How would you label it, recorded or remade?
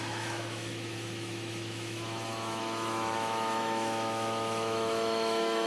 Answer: remade